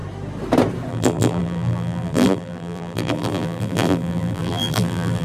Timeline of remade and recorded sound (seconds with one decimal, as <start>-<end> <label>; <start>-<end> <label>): 0.0-0.9 recorded; 0.9-5.2 remade